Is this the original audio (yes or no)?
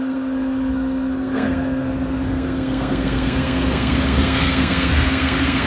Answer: no